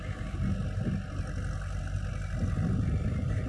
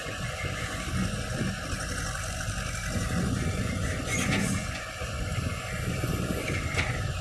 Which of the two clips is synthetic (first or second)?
second